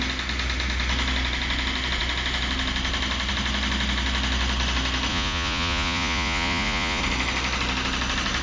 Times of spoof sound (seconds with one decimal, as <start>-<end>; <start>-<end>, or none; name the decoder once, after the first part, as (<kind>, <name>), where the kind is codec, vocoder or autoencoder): 5.1-7.0 (vocoder, Vocos)